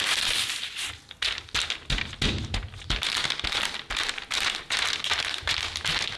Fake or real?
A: real